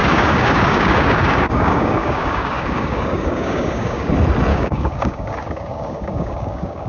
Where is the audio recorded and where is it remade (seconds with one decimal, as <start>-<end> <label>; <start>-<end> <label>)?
0.0-4.1 remade; 4.1-4.5 recorded; 4.5-6.9 remade